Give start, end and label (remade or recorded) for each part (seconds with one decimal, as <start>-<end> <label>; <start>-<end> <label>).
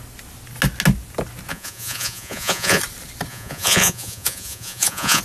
0.0-1.5 recorded; 1.5-2.8 remade; 2.8-3.3 recorded; 3.3-5.2 remade